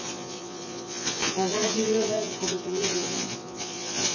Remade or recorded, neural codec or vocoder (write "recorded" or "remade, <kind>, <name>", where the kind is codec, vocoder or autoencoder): remade, vocoder, Vocos